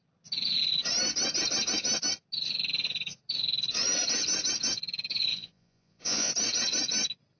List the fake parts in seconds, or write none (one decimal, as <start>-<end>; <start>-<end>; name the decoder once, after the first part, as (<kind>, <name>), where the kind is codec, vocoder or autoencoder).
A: 5.3-6.3 (vocoder, Vocos)